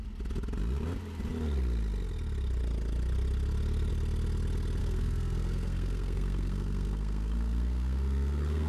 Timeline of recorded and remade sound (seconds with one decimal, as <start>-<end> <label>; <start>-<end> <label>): 0.0-4.8 recorded; 4.8-8.7 remade